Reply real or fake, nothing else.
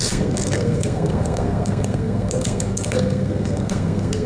fake